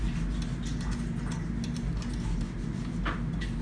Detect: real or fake real